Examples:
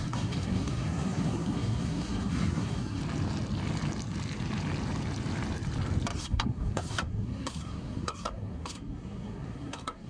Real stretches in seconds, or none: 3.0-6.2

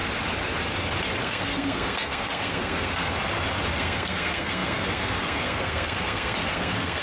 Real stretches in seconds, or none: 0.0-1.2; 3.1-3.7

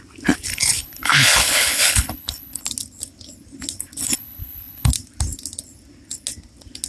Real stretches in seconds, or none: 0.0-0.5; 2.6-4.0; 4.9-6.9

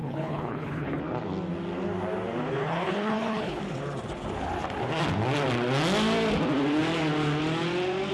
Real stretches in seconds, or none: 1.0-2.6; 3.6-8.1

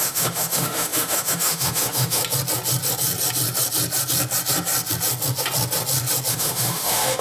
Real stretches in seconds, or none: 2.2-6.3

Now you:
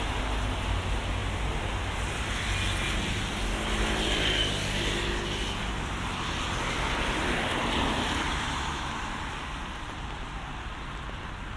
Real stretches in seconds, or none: 0.0-8.3; 8.9-11.6

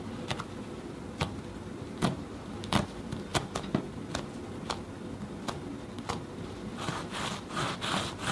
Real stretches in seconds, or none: 0.0-8.3